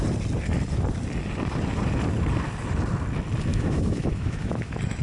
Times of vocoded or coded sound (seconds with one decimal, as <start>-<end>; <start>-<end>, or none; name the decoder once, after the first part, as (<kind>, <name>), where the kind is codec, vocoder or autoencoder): 3.5-5.0 (autoencoder, DAC-VAE)

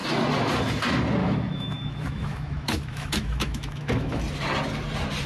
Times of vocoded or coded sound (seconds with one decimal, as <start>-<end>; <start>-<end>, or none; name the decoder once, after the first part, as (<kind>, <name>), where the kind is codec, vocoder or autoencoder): 1.2-4.2 (autoencoder, DAC-VAE)

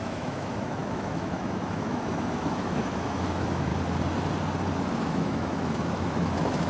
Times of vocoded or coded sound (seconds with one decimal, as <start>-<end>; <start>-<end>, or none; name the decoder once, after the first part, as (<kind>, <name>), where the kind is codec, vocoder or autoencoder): 0.0-3.7 (autoencoder, DAC-VAE); 5.0-6.7

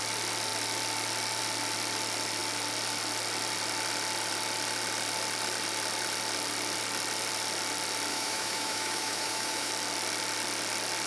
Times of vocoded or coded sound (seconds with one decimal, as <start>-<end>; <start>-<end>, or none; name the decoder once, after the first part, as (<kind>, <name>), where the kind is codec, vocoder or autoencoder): 8.1-9.7 (autoencoder, DAC-VAE)